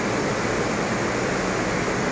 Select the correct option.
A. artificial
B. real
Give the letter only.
B